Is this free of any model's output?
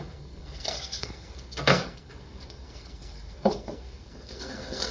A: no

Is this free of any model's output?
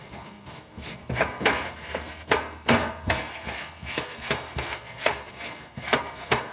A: no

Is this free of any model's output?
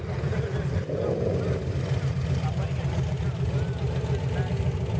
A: yes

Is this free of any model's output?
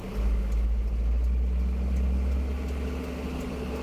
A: yes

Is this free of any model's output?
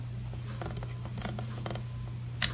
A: yes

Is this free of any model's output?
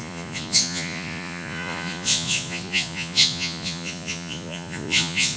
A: no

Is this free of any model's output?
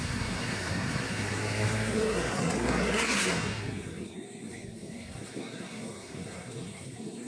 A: no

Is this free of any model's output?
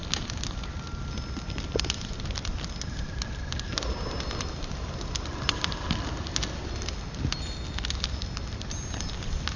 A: yes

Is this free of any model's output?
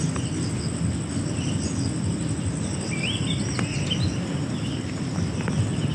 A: yes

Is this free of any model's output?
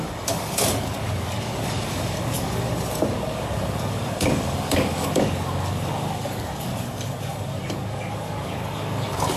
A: no